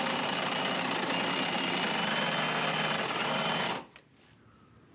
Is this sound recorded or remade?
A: recorded